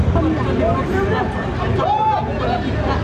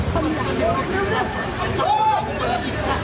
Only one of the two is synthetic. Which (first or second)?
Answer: second